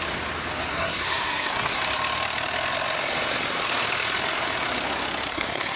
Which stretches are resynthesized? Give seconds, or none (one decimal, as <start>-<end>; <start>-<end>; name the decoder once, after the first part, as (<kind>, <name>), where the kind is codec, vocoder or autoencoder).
0.7-1.8 (codec, SNAC); 5.3-5.8